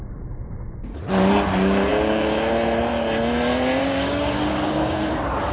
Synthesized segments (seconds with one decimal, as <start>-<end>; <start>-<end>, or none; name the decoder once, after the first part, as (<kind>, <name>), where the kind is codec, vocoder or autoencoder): 1.9-2.5 (codec, DAC); 3.8-5.1